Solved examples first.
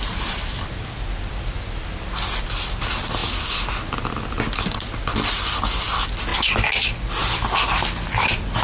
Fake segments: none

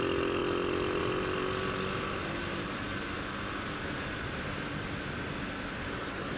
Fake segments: none

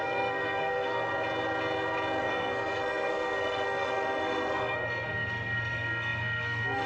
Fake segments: 0.0-1.1 (codec, SNAC); 2.2-6.9

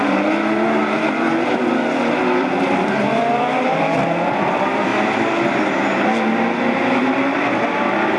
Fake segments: 0.0-4.9 (vocoder, BigVGAN v2); 7.0-8.2

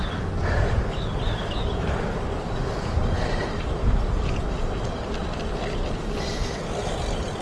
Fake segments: none

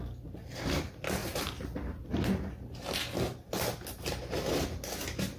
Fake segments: none